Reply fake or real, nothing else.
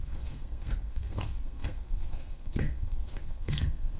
fake